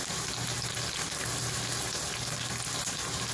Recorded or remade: recorded